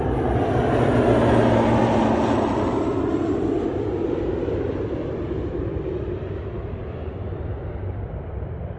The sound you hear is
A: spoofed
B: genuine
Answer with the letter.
A